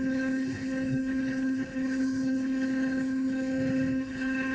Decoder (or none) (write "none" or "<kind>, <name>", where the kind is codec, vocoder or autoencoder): codec, HILCodec